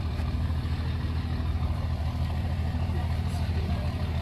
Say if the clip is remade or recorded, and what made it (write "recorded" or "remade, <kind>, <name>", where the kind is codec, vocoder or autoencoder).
remade, vocoder, BigVGAN v2